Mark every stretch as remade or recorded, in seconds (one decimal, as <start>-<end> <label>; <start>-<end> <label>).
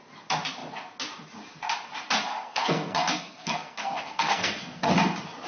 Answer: 0.0-2.3 recorded; 2.3-4.9 remade; 4.9-5.5 recorded